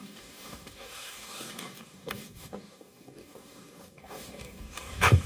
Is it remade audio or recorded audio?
remade